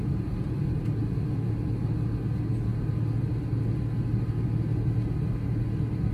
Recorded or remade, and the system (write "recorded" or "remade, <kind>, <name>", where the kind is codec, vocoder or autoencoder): recorded